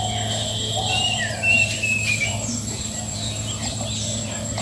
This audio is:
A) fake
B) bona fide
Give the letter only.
A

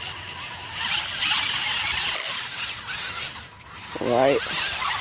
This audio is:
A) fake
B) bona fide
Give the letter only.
B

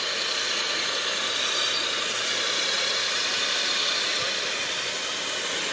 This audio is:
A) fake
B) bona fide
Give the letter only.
B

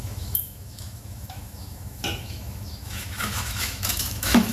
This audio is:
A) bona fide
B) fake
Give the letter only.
B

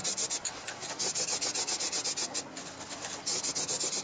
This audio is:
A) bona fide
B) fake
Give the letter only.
A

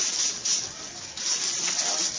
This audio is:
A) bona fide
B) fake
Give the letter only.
A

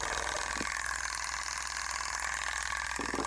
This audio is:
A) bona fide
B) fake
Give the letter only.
A